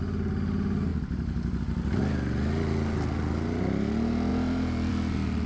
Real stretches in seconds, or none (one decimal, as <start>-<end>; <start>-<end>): 0.0-5.5